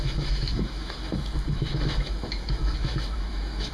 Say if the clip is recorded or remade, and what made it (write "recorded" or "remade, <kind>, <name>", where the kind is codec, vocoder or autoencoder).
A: remade, autoencoder, DAC-VAE